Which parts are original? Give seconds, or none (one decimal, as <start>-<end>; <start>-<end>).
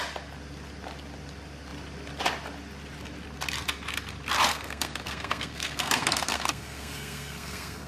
0.0-4.5